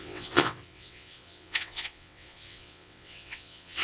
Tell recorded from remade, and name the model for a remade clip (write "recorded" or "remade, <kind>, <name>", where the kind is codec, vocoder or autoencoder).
remade, vocoder, WaveNeXt